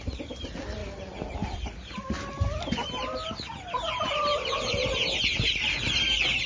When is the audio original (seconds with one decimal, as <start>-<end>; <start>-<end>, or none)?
0.0-6.5